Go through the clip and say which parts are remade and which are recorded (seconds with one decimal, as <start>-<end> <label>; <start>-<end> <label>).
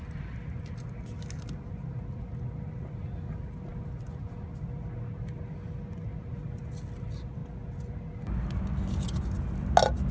0.0-10.1 recorded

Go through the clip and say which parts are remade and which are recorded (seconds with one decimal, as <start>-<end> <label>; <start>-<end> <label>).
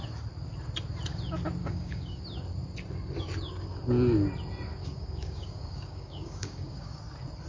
0.0-1.6 recorded; 1.6-2.2 remade; 2.2-4.8 recorded; 4.8-7.0 remade; 7.0-7.5 recorded